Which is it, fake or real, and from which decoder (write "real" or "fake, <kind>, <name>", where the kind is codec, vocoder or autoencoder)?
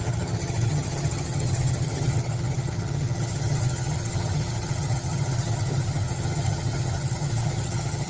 fake, vocoder, HiFi-GAN